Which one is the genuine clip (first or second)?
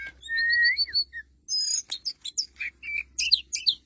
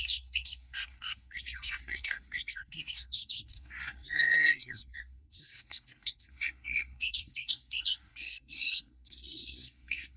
first